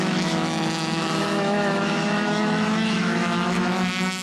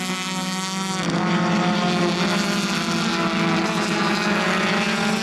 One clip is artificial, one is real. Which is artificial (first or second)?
first